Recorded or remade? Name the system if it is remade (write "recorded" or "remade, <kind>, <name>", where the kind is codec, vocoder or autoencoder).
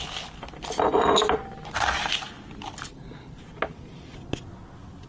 recorded